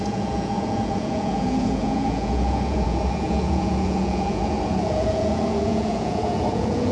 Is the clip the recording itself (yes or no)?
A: no